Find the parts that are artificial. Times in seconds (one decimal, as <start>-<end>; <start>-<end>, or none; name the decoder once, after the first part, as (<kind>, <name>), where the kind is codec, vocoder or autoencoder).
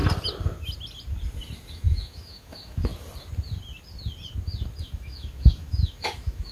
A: 1.7-2.9 (autoencoder, DAC-VAE); 4.8-6.5